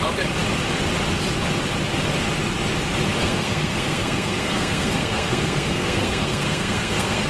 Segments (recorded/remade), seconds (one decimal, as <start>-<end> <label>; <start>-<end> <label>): 0.0-3.2 recorded; 3.2-7.3 remade